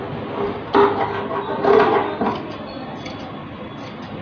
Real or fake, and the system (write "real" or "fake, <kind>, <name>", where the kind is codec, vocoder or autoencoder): real